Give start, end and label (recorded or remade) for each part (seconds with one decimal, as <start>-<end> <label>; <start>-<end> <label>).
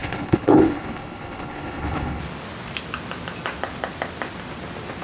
0.0-2.2 remade; 2.2-5.0 recorded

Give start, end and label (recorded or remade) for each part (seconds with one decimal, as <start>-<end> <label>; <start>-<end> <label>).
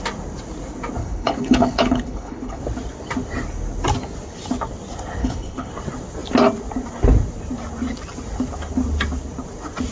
0.0-1.0 recorded; 1.0-2.6 remade; 2.6-5.2 recorded; 5.2-5.7 remade; 5.7-9.9 recorded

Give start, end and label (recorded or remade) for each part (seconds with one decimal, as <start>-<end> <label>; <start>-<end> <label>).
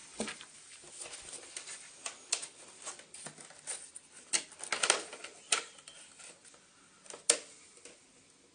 0.0-8.5 recorded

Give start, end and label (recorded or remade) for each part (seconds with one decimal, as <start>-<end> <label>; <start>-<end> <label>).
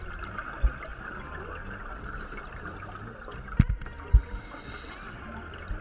0.0-5.8 recorded